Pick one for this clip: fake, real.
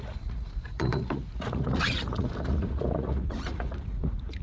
fake